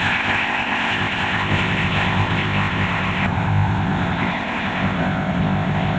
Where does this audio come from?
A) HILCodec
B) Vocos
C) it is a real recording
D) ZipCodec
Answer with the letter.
D